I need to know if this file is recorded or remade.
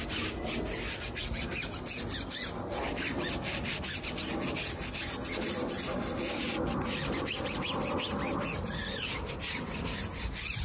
recorded